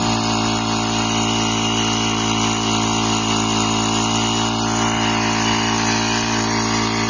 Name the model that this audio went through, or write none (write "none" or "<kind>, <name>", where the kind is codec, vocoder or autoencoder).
none